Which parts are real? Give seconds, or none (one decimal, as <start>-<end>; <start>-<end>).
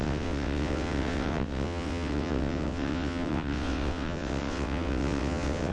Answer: none